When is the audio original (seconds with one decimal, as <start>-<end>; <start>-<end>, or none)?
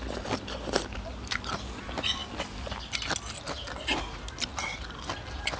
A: 0.0-5.6